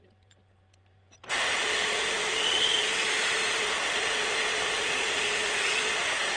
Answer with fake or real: real